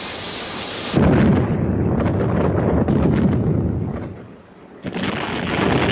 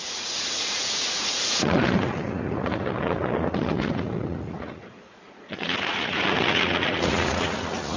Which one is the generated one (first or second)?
second